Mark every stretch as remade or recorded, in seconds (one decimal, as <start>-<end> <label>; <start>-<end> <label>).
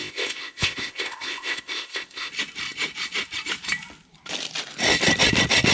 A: 0.0-2.3 remade; 2.3-5.7 recorded